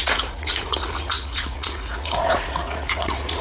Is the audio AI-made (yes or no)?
yes